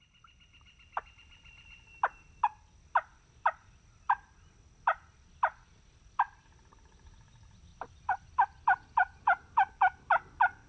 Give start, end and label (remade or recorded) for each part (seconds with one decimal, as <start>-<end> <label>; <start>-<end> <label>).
0.0-3.1 recorded; 3.1-6.6 remade; 6.6-7.7 recorded; 7.7-9.7 remade; 9.7-10.7 recorded